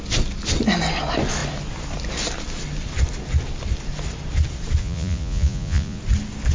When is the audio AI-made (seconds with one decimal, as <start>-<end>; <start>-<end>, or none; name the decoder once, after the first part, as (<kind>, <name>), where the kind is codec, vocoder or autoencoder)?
4.8-6.0 (vocoder, Vocos)